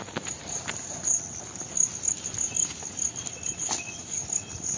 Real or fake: real